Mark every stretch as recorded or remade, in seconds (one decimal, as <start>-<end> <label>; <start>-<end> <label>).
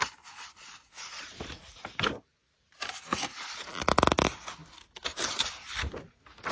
0.0-2.3 recorded; 2.3-3.5 remade; 3.5-6.5 recorded